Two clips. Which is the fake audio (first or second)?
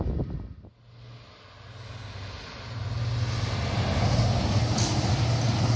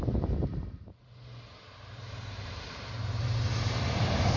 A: second